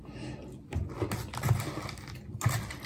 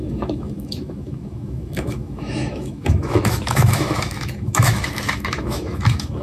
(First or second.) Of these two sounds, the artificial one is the second